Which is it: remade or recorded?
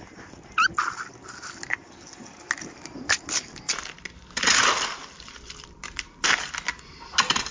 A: recorded